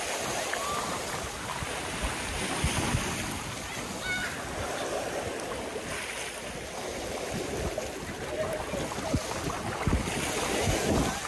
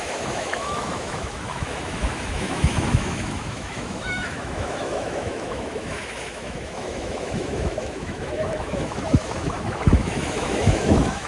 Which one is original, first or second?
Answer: first